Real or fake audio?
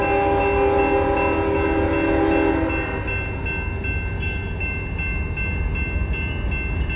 real